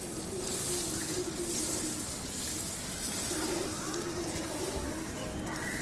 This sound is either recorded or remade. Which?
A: recorded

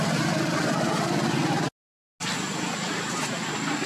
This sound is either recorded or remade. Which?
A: recorded